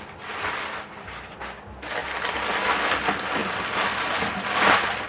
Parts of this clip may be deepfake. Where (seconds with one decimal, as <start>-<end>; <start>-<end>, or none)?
2.0-2.7